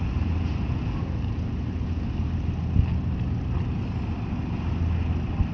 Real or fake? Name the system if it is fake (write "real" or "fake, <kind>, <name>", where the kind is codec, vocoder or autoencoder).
real